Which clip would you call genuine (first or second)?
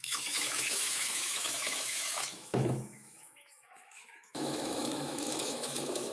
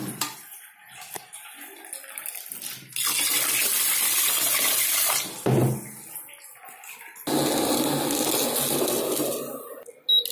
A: second